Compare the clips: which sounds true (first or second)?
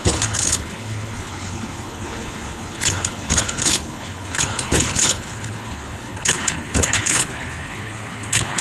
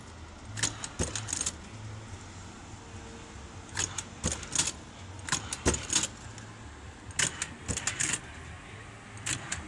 second